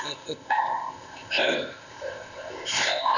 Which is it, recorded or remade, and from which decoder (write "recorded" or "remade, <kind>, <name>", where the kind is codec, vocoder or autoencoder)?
remade, codec, ZipCodec